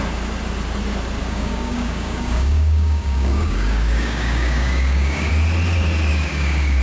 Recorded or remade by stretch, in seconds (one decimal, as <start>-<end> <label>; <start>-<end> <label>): 0.0-1.2 recorded; 1.2-5.3 remade; 5.3-6.1 recorded; 6.1-6.8 remade